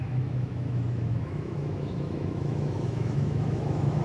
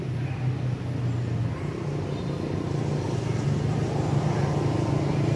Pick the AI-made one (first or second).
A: first